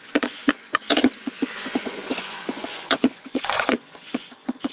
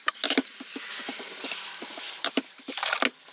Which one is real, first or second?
second